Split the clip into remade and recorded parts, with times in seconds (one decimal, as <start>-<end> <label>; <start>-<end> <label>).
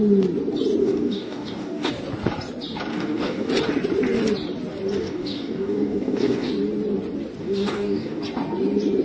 0.0-0.8 recorded; 0.8-1.9 remade; 1.9-2.9 recorded; 2.9-3.5 remade; 3.5-5.0 recorded; 5.0-6.5 remade; 6.5-7.4 recorded; 7.4-8.2 remade; 8.2-9.0 recorded